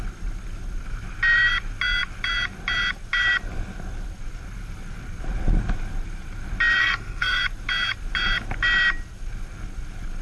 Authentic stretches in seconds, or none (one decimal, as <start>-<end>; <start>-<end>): 0.0-6.8; 7.4-10.2